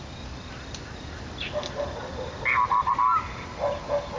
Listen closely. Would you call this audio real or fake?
real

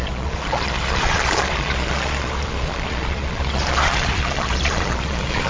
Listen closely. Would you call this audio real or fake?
fake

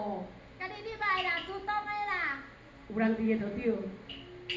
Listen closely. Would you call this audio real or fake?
real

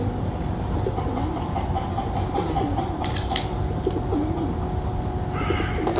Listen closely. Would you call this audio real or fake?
real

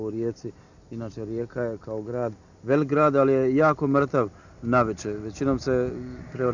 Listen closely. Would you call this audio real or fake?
real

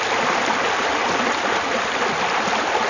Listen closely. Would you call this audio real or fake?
real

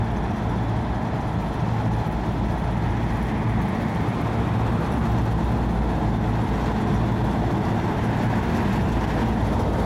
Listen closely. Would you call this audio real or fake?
real